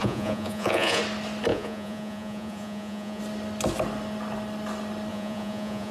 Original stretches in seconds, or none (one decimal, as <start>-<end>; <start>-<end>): 1.0-1.5; 3.2-5.1